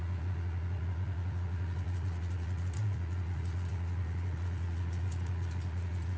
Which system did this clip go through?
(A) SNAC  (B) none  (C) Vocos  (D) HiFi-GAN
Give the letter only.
C